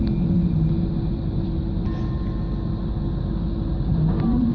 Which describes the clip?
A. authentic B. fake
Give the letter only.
A